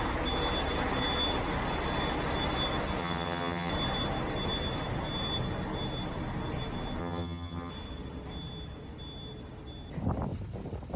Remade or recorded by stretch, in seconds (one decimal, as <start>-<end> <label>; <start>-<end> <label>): 0.0-3.0 recorded; 3.0-3.7 remade; 3.7-7.0 recorded; 7.0-7.7 remade; 7.7-11.0 recorded